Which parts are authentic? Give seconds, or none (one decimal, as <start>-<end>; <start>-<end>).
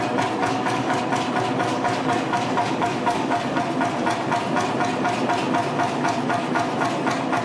0.0-0.4; 1.0-1.7; 3.6-7.4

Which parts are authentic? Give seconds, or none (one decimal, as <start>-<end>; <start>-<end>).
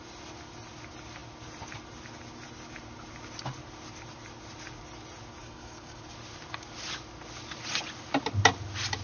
0.0-5.4; 6.0-9.0